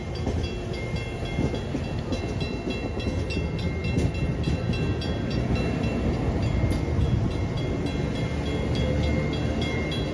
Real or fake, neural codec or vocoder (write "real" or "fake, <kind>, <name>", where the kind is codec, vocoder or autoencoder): real